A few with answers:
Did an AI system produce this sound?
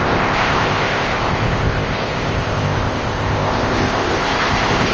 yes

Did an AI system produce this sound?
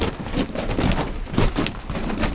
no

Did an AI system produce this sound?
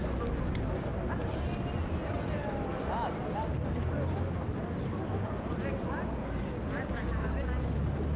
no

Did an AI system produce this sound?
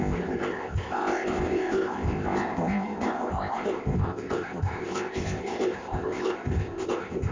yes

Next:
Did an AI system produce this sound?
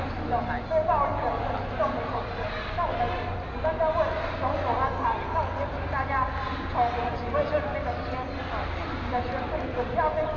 no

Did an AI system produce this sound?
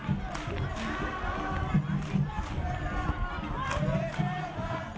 no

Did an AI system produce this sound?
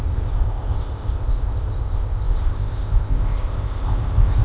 yes